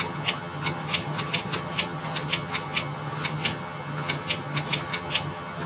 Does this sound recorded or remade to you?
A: remade